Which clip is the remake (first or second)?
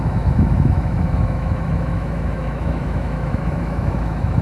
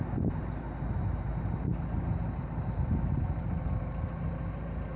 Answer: first